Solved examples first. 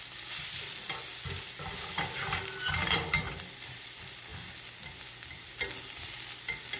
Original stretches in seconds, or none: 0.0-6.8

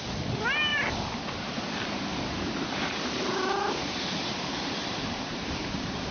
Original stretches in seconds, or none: 0.0-2.1

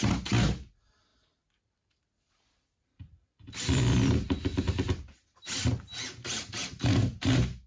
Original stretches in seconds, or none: 0.0-1.1; 5.7-7.7

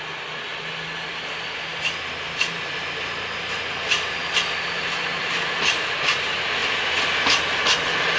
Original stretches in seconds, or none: 0.0-8.2

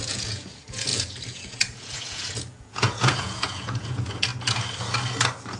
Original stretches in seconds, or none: 4.3-5.6

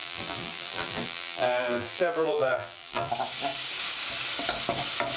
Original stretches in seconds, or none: 3.1-5.2

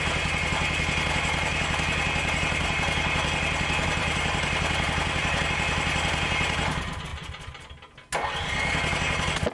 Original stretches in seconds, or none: 0.0-4.0; 5.4-7.1; 7.6-9.5

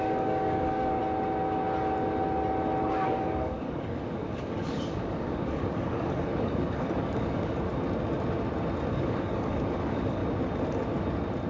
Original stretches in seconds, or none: 1.0-2.9; 7.7-8.9; 10.2-11.5